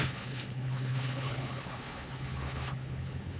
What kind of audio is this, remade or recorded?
remade